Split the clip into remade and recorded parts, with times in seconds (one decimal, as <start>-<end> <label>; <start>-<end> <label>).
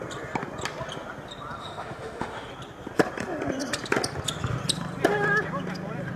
0.0-1.6 recorded; 1.6-2.5 remade; 2.5-6.2 recorded